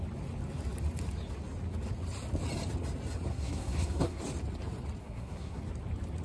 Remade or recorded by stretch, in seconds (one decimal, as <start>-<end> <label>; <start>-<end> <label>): 0.0-3.3 recorded; 3.3-4.2 remade; 4.2-5.0 recorded; 5.0-5.6 remade; 5.6-6.2 recorded

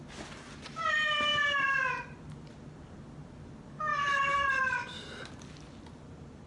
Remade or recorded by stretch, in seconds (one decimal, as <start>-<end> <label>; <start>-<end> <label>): 0.0-1.3 recorded; 1.3-2.3 remade; 2.3-3.9 recorded; 3.9-5.3 remade; 5.3-6.5 recorded

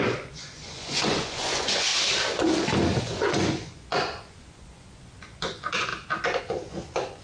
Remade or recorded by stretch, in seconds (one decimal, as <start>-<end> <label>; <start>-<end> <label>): 0.0-1.9 remade; 1.9-3.0 recorded; 3.0-5.9 remade; 5.9-6.4 recorded; 6.4-7.2 remade